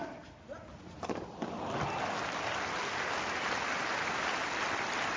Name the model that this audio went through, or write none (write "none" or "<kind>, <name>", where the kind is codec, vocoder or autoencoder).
none